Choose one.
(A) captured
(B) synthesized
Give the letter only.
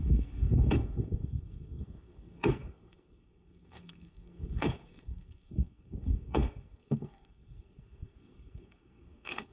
B